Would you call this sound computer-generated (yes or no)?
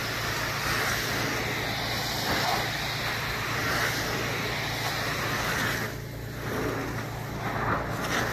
no